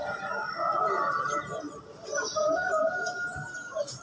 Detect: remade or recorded recorded